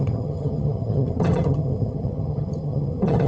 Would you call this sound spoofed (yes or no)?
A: yes